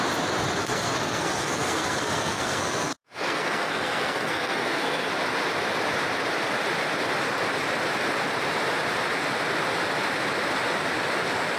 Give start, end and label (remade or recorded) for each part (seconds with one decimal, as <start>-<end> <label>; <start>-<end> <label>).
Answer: 0.0-0.6 recorded; 0.6-5.1 remade; 5.1-11.6 recorded